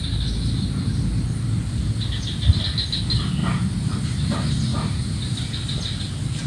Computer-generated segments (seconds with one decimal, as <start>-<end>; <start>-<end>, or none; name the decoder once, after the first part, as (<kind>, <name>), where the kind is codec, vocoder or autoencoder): 3.4-4.0 (vocoder, BigVGAN v2); 4.7-6.0